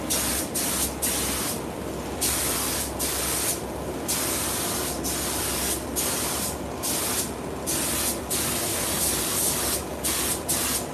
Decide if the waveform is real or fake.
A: real